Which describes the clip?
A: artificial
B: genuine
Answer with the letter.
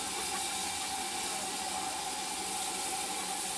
B